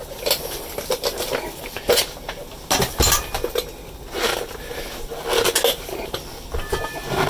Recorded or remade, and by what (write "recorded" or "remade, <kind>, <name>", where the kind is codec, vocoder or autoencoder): recorded